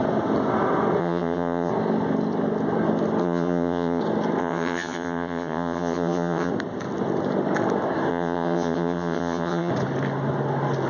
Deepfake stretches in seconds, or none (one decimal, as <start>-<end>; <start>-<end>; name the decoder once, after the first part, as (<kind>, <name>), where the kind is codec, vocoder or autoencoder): 1.0-1.7 (vocoder, HiFi-GAN); 3.2-4.0; 4.4-6.5; 8.1-9.7